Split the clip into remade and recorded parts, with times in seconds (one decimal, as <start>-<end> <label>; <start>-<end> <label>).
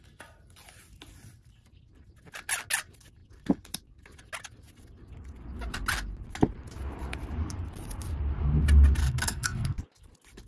0.0-9.0 recorded; 9.0-9.8 remade; 9.8-10.5 recorded